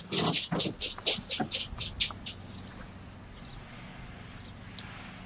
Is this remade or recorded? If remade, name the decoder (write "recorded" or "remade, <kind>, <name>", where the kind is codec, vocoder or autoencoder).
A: recorded